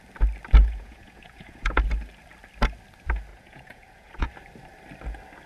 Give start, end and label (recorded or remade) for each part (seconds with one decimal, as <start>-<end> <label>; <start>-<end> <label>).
0.0-0.6 recorded; 0.6-1.8 remade; 1.8-3.3 recorded; 3.3-4.3 remade; 4.3-5.5 recorded